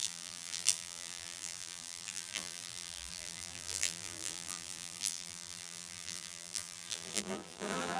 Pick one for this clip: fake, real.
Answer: fake